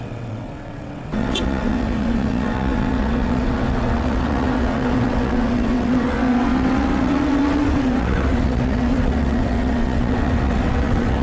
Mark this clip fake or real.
fake